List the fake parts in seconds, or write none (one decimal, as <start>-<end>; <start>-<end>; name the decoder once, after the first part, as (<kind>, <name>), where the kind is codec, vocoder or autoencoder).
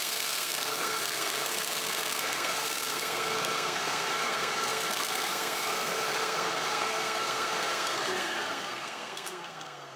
0.0-10.0 (codec, SNAC)